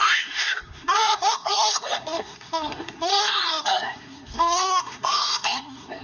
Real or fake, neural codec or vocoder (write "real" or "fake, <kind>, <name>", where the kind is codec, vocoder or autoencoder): fake, codec, SNAC